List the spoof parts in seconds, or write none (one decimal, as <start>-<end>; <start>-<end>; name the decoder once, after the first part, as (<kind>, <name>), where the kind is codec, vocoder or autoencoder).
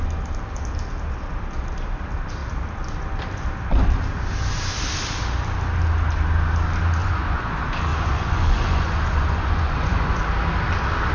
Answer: 7.0-7.5 (vocoder, Vocos); 7.9-10.2